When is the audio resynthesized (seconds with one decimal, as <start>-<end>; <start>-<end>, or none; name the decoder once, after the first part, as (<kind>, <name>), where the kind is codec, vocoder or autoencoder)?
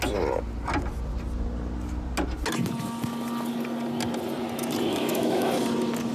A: 4.9-5.5 (autoencoder, DAC-VAE)